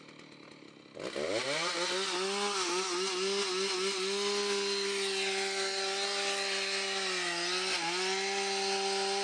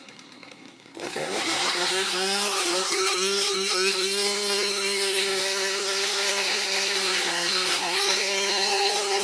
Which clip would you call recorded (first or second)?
first